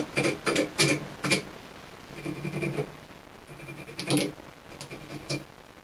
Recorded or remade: recorded